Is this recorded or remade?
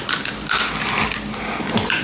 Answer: recorded